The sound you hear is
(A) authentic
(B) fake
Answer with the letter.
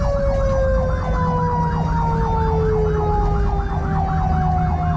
A